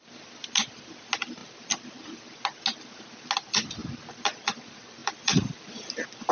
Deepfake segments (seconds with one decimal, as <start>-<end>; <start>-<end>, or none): 5.0-6.3